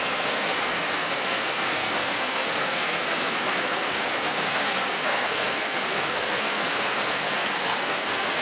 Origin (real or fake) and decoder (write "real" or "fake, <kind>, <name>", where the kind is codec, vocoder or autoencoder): fake, codec, SNAC